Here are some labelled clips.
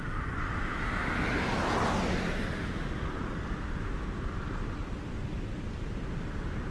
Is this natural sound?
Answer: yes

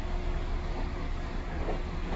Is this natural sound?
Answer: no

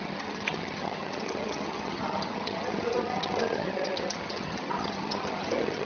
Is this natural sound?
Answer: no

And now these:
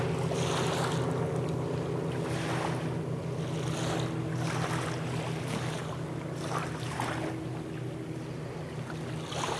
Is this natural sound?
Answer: yes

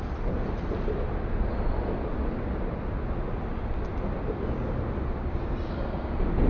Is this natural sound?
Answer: yes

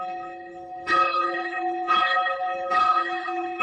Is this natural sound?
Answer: no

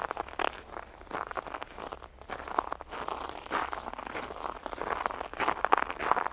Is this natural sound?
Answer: yes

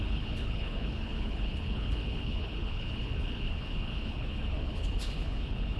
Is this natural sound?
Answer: no